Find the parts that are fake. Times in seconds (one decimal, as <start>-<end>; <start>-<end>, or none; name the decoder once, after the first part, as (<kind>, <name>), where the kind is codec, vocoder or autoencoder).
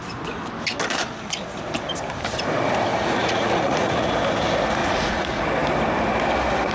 2.9-4.1 (vocoder, Vocos); 4.8-5.4